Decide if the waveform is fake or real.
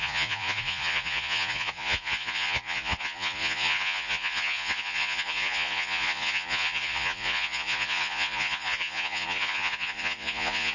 fake